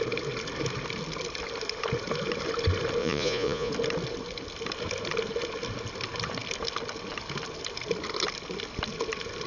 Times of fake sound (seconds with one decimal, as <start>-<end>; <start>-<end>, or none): 3.0-3.7